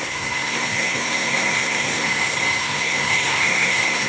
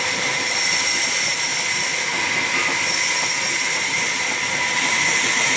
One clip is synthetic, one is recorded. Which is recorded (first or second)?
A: second